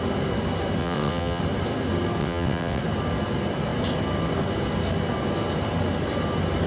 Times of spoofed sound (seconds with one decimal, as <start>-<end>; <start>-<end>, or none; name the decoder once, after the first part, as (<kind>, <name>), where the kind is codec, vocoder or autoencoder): 0.8-1.4 (vocoder, WaveNeXt); 2.2-2.8